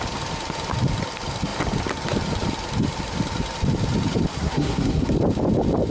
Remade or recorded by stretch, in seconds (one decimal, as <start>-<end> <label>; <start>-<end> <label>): 0.0-4.3 recorded; 4.3-5.1 remade; 5.1-5.9 recorded